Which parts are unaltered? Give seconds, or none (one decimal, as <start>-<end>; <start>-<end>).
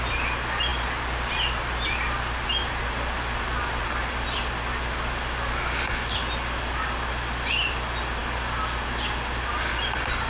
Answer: 0.0-10.3